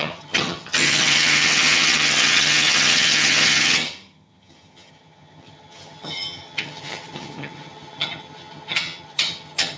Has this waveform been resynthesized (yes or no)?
yes